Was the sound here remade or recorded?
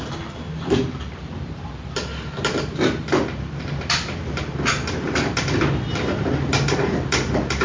remade